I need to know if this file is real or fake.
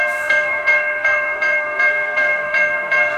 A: fake